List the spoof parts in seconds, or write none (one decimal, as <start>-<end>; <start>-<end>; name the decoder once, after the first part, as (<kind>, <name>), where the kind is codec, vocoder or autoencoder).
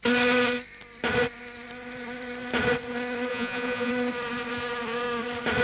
3.3-3.9 (vocoder, Vocos)